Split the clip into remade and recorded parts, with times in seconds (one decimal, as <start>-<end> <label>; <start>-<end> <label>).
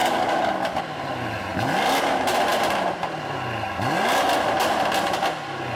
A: 0.0-0.8 remade; 0.8-5.8 recorded